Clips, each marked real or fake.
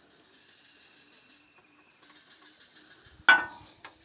real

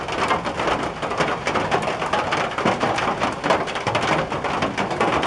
real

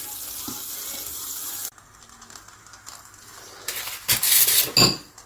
real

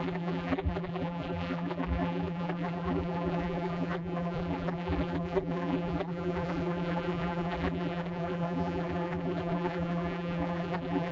fake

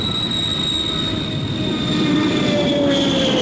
fake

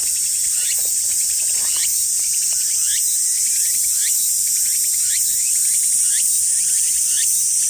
real